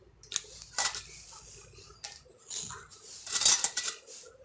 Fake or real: real